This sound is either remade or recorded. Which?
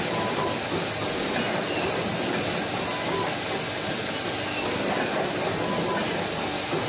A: recorded